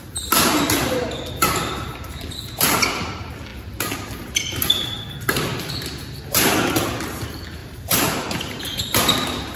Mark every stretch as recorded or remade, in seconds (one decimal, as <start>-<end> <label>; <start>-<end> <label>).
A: 0.0-7.6 recorded; 7.6-8.6 remade; 8.6-9.6 recorded